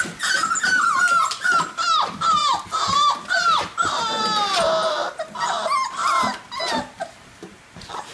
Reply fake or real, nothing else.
real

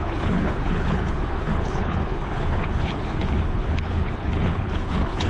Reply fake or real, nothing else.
fake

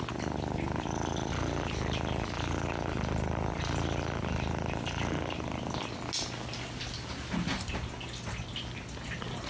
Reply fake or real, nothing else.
real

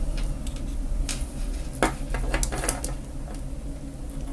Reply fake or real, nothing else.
real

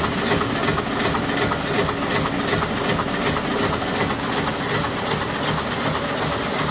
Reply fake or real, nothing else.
real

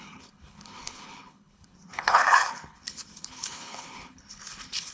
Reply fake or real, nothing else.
fake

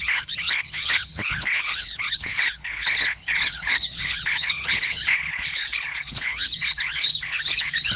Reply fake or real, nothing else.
fake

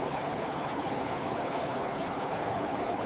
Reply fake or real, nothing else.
fake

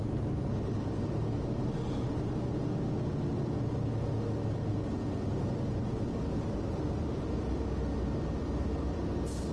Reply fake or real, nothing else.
real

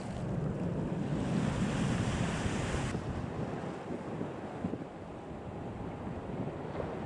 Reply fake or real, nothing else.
real